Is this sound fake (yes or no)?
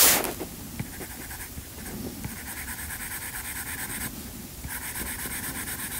no